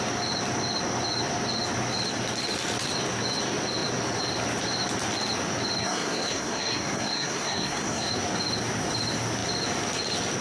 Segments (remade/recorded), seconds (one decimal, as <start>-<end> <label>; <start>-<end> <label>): 0.0-5.8 recorded; 5.8-8.1 remade; 8.1-10.4 recorded